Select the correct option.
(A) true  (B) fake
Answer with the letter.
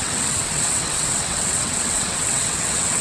B